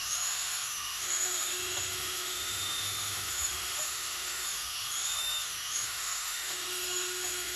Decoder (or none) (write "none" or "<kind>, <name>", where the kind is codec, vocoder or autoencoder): autoencoder, DAC-VAE